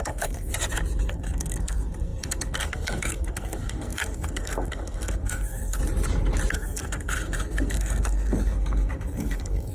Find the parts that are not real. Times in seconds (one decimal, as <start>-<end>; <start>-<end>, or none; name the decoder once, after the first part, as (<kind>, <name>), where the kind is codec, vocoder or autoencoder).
0.0-0.5 (codec, SNAC); 1.1-5.8; 6.5-9.7